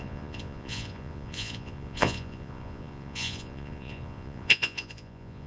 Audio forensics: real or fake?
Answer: fake